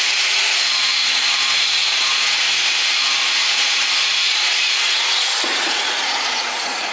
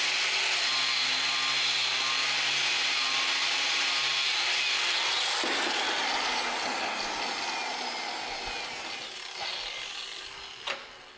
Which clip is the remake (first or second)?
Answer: first